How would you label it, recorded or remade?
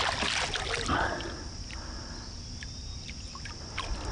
recorded